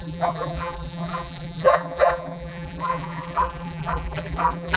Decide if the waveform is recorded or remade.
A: remade